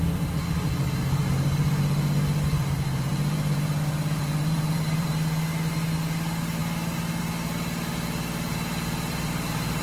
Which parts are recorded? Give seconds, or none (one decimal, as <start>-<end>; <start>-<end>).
0.0-2.5; 5.1-9.8

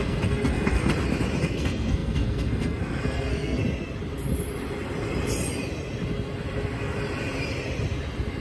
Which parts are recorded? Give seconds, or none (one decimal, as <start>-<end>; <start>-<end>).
0.9-1.4; 3.6-8.4

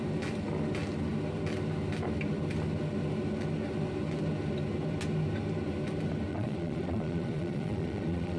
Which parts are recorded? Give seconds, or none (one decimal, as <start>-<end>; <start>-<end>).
0.0-6.3

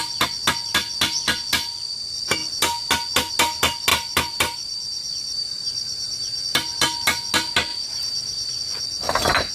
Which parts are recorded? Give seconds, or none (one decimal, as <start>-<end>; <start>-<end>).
0.0-3.9; 6.4-7.7; 8.6-9.5

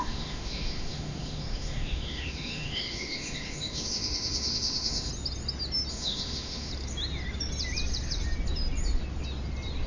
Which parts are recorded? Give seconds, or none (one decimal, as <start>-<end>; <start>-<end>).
5.1-5.9; 6.7-9.9

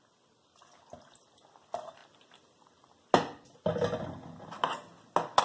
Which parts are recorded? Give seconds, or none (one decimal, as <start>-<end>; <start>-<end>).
0.0-5.4

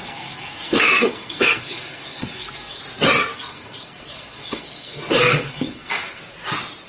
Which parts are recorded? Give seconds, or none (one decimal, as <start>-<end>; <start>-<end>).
2.8-3.3; 6.2-6.9